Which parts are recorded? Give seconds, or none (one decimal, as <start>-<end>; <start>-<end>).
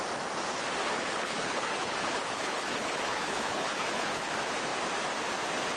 0.0-0.8; 4.3-5.8